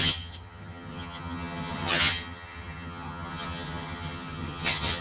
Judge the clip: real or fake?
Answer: fake